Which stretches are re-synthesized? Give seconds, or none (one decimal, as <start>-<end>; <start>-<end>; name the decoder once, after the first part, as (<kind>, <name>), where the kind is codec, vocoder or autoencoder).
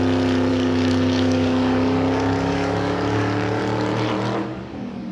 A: 0.5-3.6 (codec, DAC); 4.4-5.1